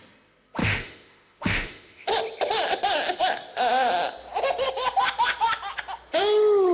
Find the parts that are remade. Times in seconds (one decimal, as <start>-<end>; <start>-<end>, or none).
0.6-2.1